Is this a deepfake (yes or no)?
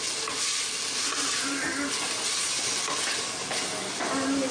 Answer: no